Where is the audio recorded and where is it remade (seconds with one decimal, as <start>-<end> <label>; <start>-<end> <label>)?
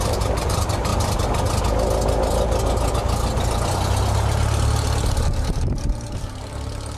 0.0-0.9 remade; 0.9-5.0 recorded; 5.0-7.0 remade